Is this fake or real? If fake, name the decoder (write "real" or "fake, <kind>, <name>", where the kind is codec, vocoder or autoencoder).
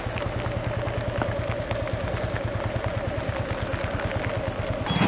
real